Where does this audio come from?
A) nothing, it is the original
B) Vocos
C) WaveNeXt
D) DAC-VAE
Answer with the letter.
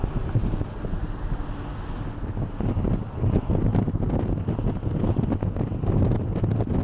A